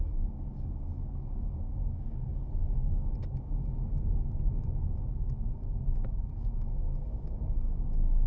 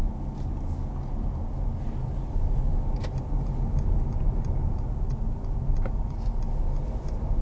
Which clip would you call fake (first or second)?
first